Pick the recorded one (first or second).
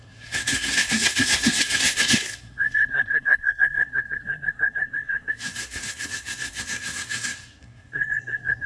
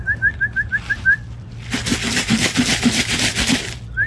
second